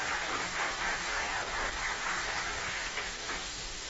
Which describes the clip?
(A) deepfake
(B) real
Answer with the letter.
A